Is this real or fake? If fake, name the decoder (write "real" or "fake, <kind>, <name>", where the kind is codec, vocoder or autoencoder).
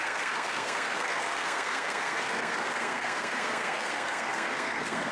fake, codec, SNAC